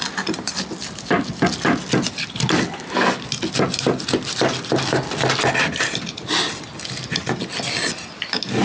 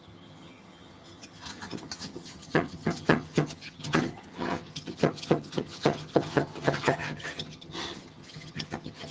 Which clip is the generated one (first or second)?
second